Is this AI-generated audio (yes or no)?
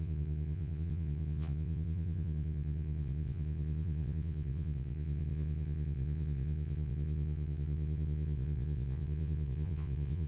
yes